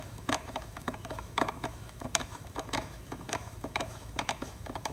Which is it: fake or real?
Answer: fake